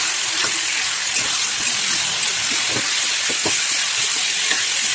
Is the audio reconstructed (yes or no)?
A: no